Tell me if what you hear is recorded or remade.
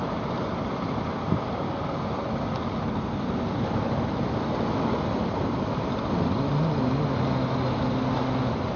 recorded